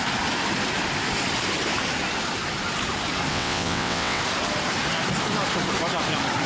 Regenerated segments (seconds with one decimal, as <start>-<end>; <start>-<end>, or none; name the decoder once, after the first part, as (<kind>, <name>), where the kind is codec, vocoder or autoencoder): 3.3-4.2 (vocoder, WaveNeXt)